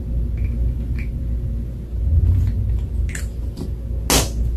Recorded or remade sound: recorded